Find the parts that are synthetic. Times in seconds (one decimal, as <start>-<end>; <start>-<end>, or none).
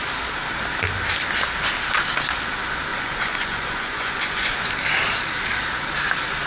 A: 2.9-4.7